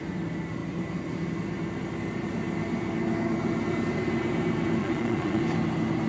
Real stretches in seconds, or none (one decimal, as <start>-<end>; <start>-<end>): 0.0-4.8; 5.4-6.1